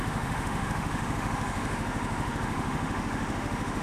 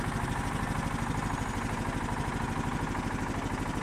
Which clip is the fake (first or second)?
first